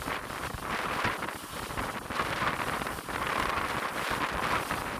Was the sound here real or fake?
fake